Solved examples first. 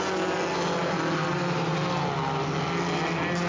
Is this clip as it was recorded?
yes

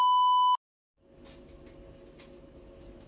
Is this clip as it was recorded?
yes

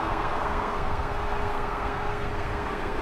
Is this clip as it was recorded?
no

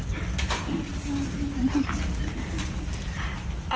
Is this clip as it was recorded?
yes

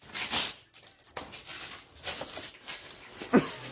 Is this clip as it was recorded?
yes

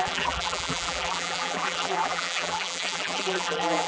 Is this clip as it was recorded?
no